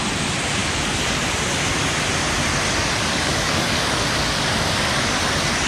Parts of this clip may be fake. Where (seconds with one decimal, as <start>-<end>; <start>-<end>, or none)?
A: 0.6-1.2; 2.5-5.2